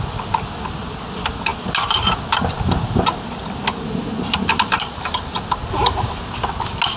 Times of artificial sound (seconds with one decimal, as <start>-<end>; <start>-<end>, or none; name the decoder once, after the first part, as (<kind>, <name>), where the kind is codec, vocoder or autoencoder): none